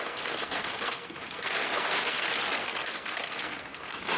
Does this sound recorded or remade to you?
remade